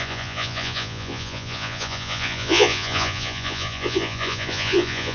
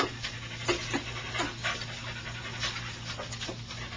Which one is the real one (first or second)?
second